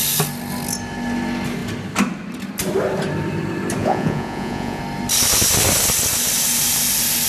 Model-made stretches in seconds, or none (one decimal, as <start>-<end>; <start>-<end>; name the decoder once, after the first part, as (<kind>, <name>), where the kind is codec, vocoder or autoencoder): 3.8-4.8 (vocoder, Vocos)